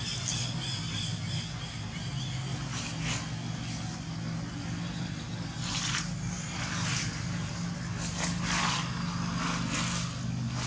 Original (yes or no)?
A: yes